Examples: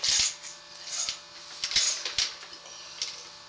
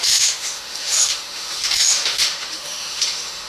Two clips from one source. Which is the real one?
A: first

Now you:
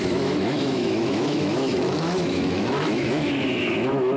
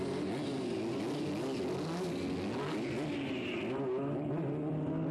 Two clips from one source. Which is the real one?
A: second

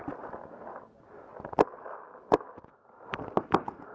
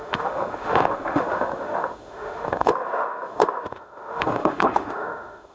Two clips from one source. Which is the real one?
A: first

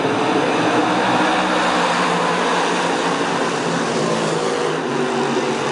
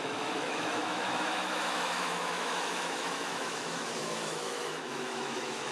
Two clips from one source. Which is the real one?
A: first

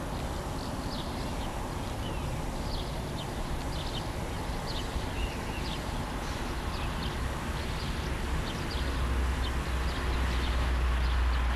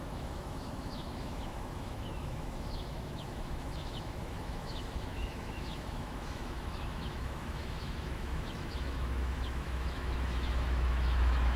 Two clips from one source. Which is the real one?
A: first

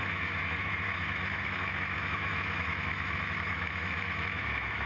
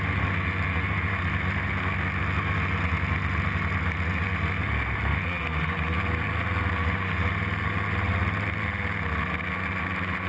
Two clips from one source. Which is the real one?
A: second